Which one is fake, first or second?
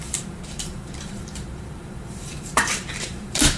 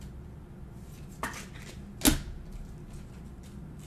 first